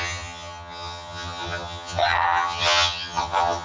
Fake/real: fake